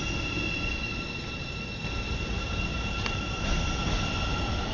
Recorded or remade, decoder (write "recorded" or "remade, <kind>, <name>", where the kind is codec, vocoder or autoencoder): recorded